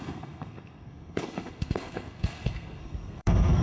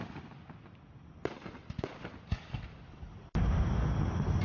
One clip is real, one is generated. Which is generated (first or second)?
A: first